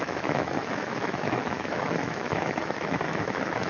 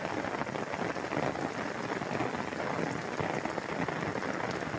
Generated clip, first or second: first